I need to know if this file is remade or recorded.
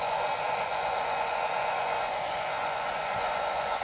remade